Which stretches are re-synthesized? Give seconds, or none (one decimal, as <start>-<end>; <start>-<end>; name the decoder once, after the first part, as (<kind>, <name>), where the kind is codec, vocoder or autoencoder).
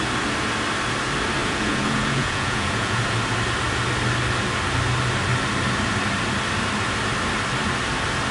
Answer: 1.4-3.0 (vocoder, Vocos)